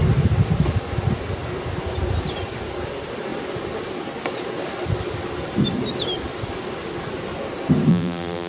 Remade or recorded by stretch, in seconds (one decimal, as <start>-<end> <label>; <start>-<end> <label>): 0.0-7.9 recorded; 7.9-8.5 remade